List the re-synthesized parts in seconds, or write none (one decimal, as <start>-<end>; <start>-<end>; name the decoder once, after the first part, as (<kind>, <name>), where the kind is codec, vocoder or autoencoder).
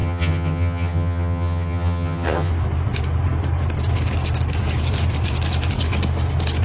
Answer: 0.0-2.5 (vocoder, HiFi-GAN)